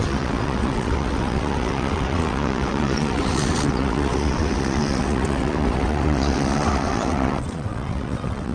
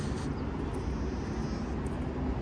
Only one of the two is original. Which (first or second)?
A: second